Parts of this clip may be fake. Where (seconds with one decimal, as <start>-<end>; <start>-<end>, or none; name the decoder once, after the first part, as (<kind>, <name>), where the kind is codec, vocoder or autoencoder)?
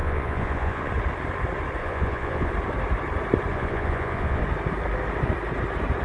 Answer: 0.0-0.9 (vocoder, Vocos); 1.8-2.5; 3.5-4.4